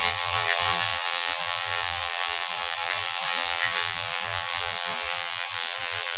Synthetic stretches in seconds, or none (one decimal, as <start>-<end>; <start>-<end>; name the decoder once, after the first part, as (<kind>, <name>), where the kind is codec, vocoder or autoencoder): 0.0-6.2 (vocoder, BigVGAN v2)